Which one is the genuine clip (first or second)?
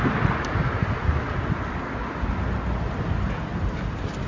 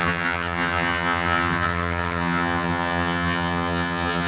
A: first